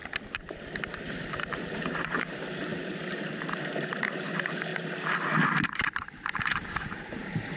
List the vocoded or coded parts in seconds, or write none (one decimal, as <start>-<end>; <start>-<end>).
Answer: 1.1-4.7; 5.7-7.6